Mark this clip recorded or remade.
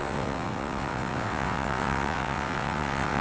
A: remade